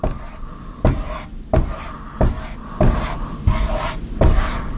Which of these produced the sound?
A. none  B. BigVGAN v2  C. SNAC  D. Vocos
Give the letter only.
A